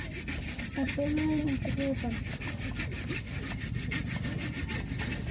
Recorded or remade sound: recorded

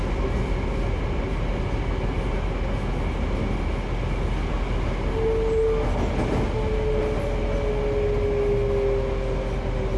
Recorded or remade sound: recorded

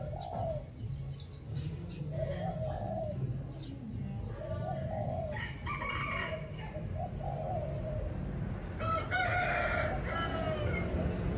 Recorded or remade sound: recorded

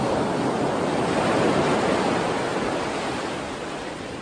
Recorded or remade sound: recorded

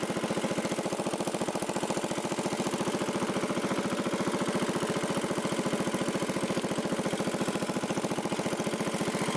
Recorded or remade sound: recorded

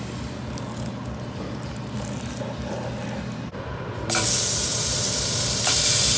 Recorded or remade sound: recorded